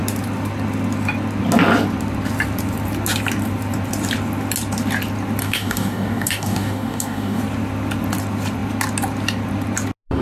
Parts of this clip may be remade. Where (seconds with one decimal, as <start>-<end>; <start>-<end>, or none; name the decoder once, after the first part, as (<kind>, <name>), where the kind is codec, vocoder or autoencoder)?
5.4-7.4 (codec, DAC)